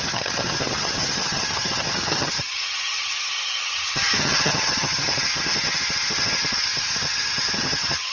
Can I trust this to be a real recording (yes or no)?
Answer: no